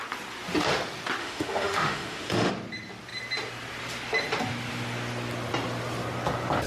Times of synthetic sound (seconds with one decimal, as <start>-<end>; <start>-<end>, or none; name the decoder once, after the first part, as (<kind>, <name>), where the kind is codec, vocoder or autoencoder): 1.2-2.5 (autoencoder, DAC-VAE)